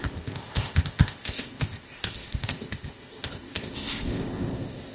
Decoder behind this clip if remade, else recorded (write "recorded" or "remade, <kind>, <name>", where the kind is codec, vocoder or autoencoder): remade, codec, ZipCodec